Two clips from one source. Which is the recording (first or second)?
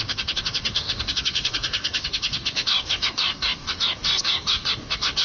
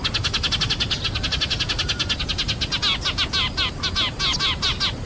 second